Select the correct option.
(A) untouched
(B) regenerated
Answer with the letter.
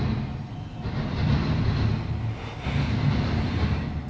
A